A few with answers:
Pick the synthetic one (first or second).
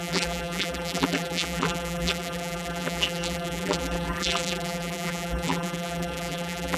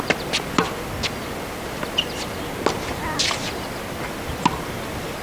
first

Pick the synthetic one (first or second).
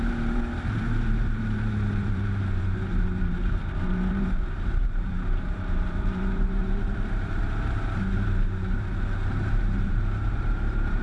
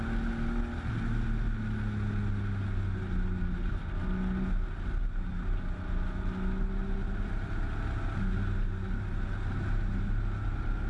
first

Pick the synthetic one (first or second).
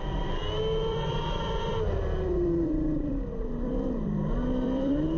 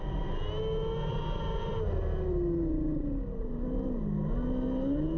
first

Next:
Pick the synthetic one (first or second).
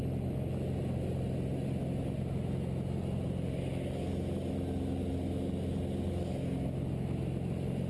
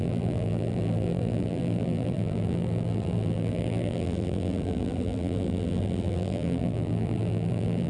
second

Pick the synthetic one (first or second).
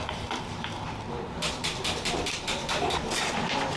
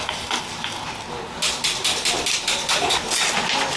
first